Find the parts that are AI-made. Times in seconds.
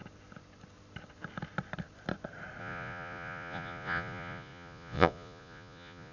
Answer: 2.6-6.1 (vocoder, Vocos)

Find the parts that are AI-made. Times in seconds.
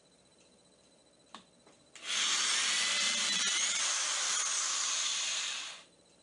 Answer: 0.0-1.0 (vocoder, BigVGAN v2); 2.6-4.5; 5.3-6.2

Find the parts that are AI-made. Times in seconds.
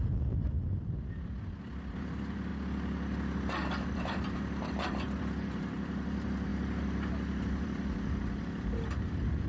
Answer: 0.0-2.5 (vocoder, BigVGAN v2); 4.0-6.5; 7.5-9.5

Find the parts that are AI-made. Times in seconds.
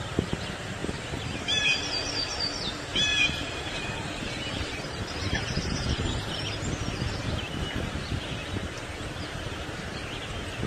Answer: 3.1-6.5 (vocoder, BigVGAN v2); 7.2-10.2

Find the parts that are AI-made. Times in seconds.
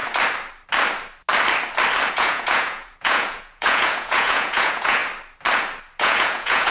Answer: 2.1-5.0 (vocoder, Vocos); 6.0-6.7